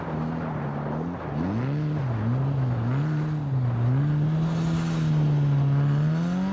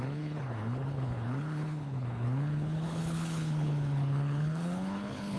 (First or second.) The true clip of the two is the first